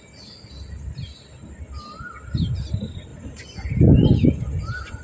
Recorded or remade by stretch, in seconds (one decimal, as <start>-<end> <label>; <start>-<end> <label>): 0.0-5.0 recorded